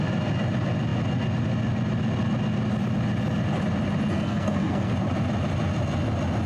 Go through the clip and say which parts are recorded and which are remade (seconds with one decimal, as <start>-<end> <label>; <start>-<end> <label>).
0.0-4.1 recorded; 4.1-4.9 remade; 4.9-6.5 recorded